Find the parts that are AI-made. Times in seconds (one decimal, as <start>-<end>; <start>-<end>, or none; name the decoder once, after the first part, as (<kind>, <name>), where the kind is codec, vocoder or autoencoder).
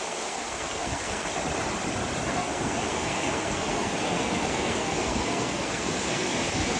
0.0-1.3 (codec, SNAC); 2.3-6.8